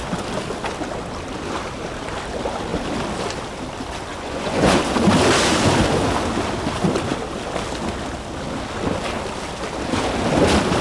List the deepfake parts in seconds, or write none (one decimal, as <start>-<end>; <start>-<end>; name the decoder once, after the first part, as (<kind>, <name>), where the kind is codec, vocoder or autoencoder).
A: 4.1-4.8 (vocoder, Vocos)